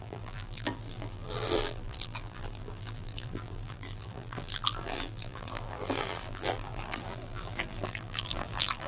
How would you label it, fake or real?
fake